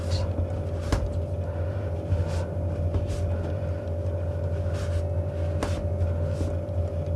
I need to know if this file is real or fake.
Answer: real